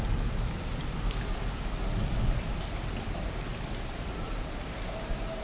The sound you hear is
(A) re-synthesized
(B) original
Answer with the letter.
B